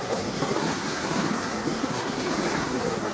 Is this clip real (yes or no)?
no